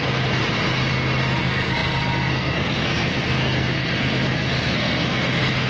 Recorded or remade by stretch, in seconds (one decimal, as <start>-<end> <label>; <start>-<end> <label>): 0.0-0.4 remade; 0.4-1.4 recorded; 1.4-5.7 remade